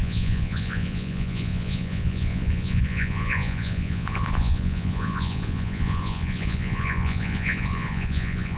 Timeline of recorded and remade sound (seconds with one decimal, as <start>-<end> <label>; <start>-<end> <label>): 0.0-8.6 remade